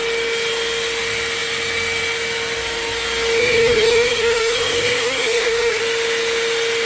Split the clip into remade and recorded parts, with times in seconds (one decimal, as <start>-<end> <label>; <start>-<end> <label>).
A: 0.0-3.4 recorded; 3.4-5.8 remade; 5.8-6.9 recorded